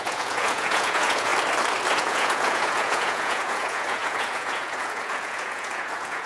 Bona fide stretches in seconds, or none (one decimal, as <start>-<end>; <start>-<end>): 1.3-1.9